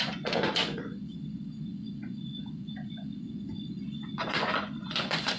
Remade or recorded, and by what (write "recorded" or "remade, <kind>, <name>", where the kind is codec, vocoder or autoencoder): remade, vocoder, Vocos